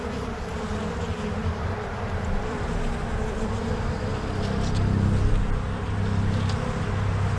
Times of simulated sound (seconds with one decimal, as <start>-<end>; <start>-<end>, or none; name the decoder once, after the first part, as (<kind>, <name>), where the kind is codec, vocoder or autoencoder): 1.4-2.7 (vocoder, BigVGAN v2)